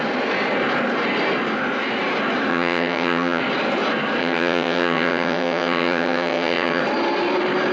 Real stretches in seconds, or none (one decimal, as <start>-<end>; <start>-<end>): 0.0-2.5; 3.4-4.2; 6.8-7.7